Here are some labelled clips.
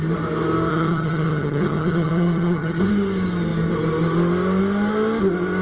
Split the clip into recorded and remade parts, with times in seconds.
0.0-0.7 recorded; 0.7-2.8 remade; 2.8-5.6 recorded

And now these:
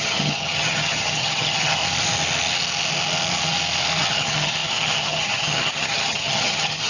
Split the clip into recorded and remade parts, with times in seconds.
0.0-1.8 remade; 1.8-4.0 recorded; 4.0-6.9 remade

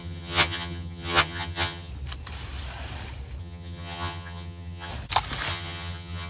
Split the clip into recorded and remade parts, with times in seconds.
0.0-1.9 remade; 1.9-3.4 recorded; 3.4-4.9 remade; 4.9-5.5 recorded; 5.5-6.3 remade

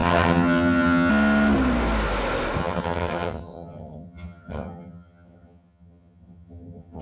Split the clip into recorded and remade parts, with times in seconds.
0.0-1.1 remade; 1.1-2.6 recorded; 2.6-7.0 remade

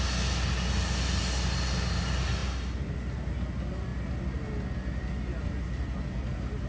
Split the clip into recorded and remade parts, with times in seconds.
0.0-6.7 recorded

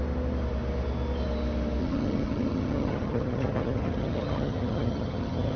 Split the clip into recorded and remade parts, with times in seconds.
0.0-1.8 recorded; 1.8-5.6 remade